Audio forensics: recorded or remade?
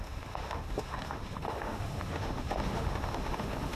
remade